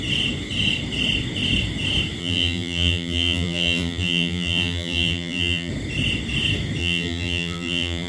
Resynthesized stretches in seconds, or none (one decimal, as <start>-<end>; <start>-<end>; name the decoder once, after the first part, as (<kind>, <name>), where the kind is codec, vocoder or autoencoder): 2.2-5.7 (vocoder, BigVGAN v2); 6.8-8.1